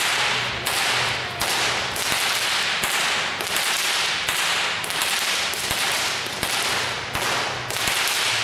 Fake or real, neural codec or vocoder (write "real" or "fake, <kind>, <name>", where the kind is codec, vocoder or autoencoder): real